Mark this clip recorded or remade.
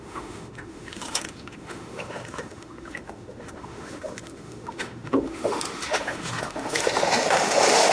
remade